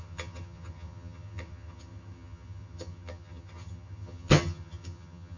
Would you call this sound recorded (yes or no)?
no